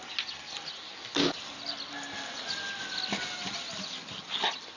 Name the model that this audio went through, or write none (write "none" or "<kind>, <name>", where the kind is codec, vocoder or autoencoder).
none